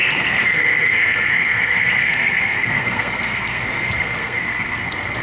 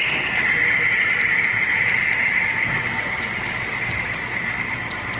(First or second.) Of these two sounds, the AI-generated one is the first